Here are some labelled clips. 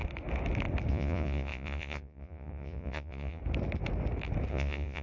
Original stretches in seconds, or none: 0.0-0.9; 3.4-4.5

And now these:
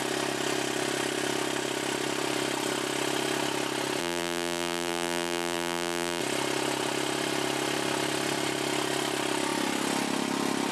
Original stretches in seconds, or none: 0.0-4.0; 6.2-10.7